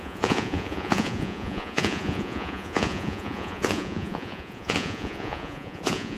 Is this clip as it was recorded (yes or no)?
no